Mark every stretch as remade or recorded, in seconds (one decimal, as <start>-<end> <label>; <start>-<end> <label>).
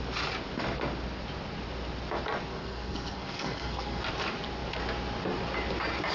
0.0-2.5 recorded; 2.5-4.0 remade; 4.0-6.1 recorded